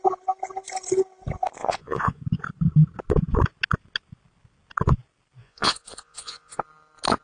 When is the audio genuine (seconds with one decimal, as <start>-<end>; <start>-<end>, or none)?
0.0-1.6; 2.2-5.4; 6.6-7.2